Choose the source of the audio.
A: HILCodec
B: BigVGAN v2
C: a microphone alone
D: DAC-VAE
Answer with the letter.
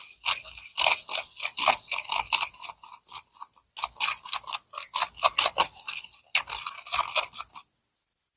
C